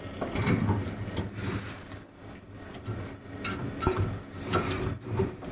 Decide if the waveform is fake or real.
real